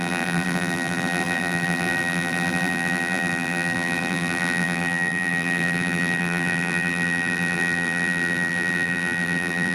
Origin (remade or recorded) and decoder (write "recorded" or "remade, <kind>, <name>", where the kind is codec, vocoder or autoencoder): remade, vocoder, BigVGAN v2